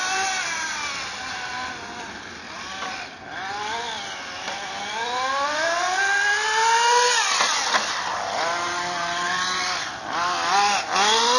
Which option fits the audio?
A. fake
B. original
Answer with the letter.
B